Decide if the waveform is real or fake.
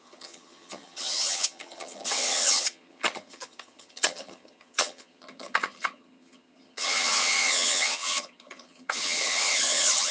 fake